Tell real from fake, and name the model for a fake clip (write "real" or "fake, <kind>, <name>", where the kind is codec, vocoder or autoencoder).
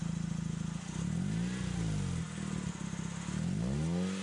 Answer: real